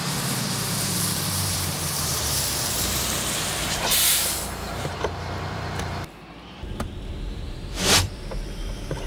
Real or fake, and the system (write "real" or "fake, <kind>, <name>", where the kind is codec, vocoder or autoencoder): fake, vocoder, BigVGAN v2